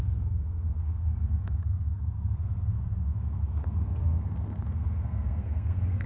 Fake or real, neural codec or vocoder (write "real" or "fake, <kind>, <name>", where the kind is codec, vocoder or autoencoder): fake, codec, SNAC